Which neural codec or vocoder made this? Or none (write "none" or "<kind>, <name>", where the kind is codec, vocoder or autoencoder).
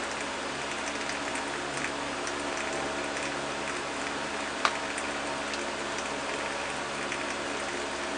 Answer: none